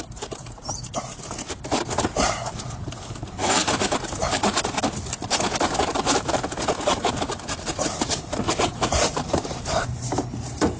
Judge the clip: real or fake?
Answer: fake